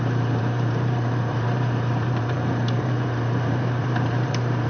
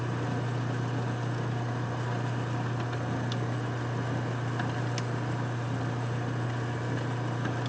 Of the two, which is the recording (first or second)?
second